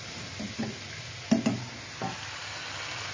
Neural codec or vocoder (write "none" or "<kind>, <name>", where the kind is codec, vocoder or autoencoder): none